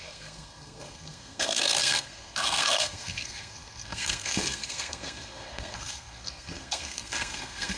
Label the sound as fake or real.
fake